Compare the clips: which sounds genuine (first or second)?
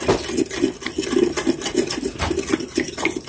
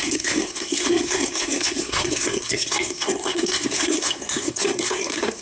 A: first